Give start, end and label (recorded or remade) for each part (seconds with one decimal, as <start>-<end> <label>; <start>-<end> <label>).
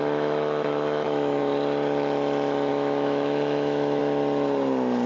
0.0-1.4 remade; 1.4-2.7 recorded; 2.7-4.0 remade; 4.0-5.1 recorded